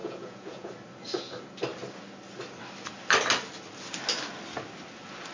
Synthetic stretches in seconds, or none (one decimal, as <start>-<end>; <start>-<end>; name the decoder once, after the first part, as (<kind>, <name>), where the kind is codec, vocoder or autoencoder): 0.0-0.7 (vocoder, Vocos)